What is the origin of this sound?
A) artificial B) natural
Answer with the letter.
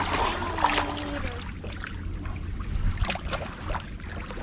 B